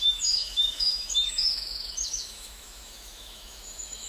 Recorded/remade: remade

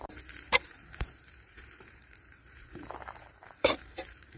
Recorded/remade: remade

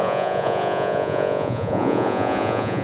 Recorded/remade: remade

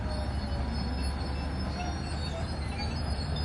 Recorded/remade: recorded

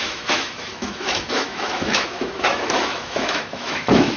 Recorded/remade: remade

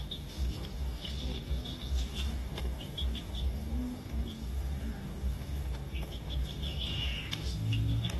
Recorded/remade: remade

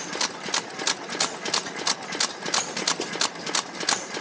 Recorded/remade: recorded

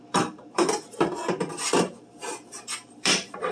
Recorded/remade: remade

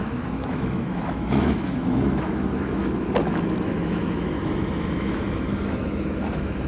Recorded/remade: remade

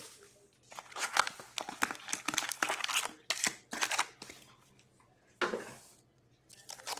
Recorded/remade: recorded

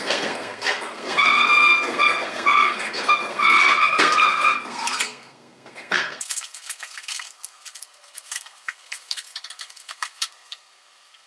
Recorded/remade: remade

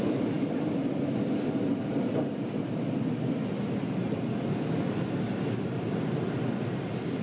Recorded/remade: recorded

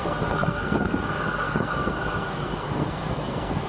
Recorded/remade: remade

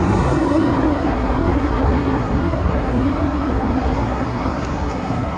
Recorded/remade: remade